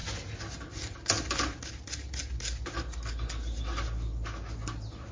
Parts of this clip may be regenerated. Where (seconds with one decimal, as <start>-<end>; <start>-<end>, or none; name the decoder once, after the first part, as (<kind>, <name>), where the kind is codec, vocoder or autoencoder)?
none